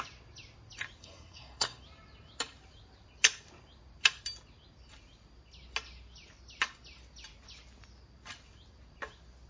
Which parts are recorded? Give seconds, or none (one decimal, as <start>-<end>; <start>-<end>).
0.0-1.0; 1.8-9.5